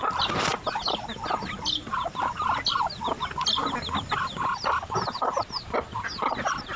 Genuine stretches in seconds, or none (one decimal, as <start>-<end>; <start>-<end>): 0.0-6.8

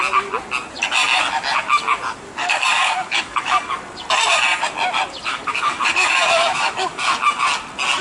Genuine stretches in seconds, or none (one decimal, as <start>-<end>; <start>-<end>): 0.0-2.4; 3.8-5.3; 7.0-8.0